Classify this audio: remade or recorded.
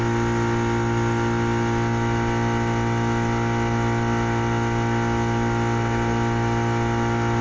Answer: recorded